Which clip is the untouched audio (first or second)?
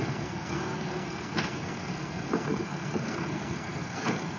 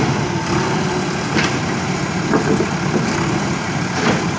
second